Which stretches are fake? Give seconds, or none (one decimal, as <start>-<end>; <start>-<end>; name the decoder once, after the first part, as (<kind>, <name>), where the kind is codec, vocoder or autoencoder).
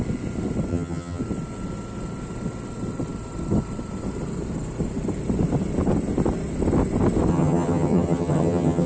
0.7-1.2 (vocoder, HiFi-GAN); 7.3-8.9